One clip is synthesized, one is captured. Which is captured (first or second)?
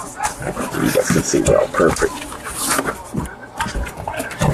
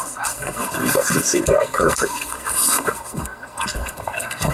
first